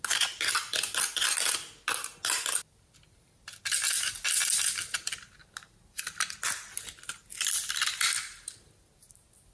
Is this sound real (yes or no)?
yes